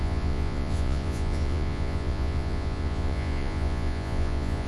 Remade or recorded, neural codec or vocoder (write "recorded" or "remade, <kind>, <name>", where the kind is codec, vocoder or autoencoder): remade, vocoder, Vocos